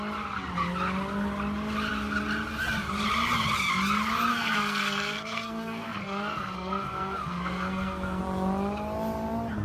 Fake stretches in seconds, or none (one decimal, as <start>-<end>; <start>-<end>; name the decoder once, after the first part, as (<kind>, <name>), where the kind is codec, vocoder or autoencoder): 4.3-8.2 (codec, SNAC)